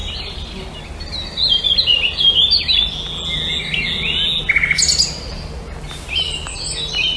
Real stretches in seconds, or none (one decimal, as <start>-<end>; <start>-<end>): 0.0-7.2